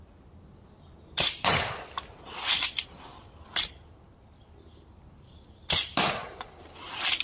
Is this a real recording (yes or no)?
no